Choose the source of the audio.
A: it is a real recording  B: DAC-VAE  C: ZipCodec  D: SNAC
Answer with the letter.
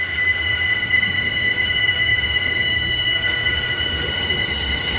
B